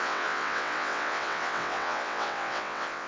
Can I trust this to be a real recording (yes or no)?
no